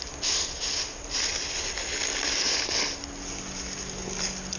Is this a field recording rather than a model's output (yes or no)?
yes